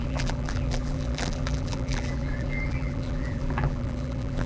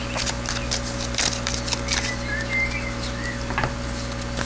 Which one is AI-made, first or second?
first